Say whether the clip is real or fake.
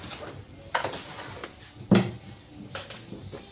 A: real